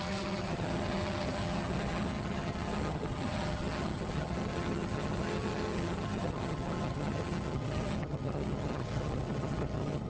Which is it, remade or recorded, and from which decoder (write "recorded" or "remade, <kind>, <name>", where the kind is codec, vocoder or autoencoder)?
remade, vocoder, HiFi-GAN